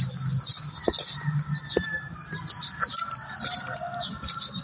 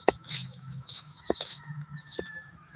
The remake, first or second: second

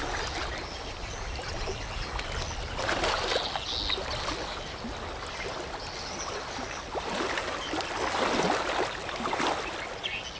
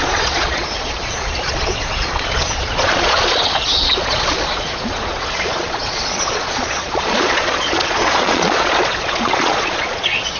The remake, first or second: second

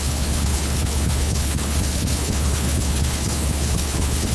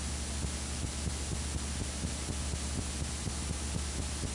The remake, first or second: first